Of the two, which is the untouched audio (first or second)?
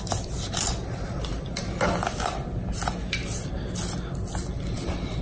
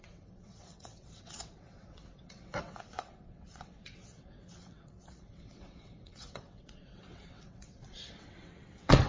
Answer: first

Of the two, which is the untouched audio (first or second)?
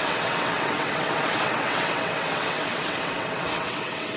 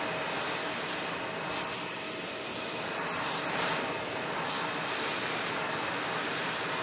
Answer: second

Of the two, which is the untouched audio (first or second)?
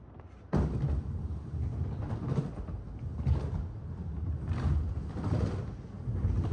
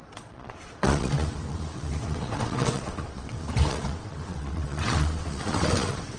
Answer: first